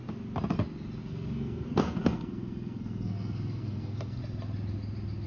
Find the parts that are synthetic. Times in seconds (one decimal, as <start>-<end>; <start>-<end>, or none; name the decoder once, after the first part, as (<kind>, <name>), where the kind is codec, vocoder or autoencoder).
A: 1.0-4.2 (codec, SNAC)